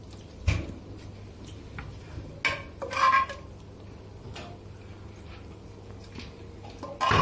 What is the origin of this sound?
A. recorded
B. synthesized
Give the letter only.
A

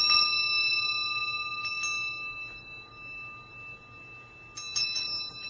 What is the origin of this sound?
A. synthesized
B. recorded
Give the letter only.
B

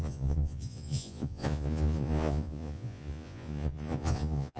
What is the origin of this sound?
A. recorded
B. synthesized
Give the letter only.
B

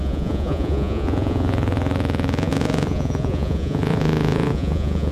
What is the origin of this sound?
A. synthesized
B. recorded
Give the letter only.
A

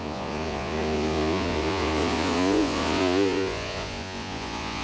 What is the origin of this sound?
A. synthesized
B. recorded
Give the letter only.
A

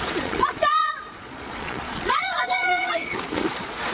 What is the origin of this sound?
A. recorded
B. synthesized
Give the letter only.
B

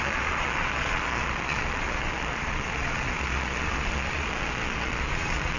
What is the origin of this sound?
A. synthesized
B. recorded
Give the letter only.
A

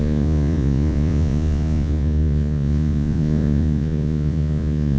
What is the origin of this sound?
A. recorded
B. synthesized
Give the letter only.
B